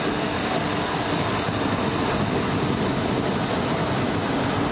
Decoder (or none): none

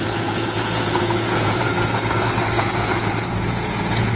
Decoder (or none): vocoder, Vocos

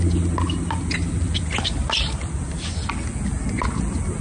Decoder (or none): none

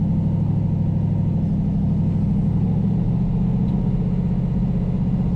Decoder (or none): none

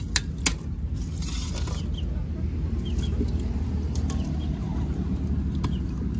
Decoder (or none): none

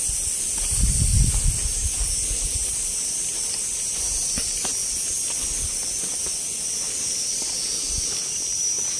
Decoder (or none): none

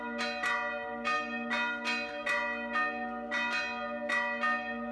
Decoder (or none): none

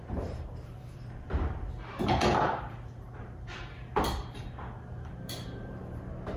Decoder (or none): vocoder, BigVGAN v2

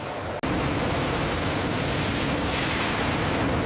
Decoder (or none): none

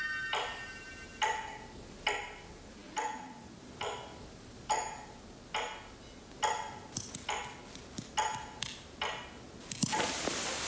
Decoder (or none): none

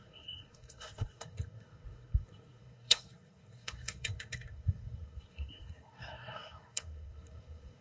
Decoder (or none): codec, SNAC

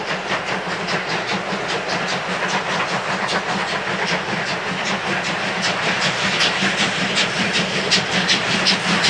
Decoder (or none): none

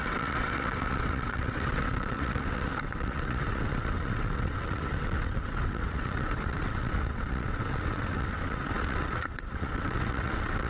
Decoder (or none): vocoder, WaveNeXt